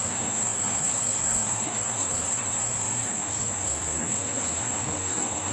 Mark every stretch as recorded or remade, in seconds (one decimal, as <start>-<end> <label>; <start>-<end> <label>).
0.0-5.5 remade